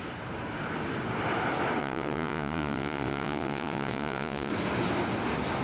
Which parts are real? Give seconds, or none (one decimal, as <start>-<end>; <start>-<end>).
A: 0.0-1.8; 4.5-5.6